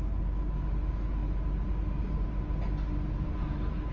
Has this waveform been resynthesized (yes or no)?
no